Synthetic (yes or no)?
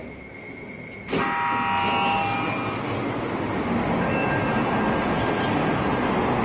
no